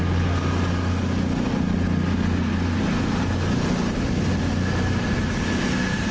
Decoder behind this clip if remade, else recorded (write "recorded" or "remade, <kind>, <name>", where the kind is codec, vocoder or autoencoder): recorded